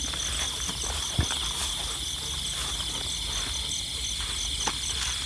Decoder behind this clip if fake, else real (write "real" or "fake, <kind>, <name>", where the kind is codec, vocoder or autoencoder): real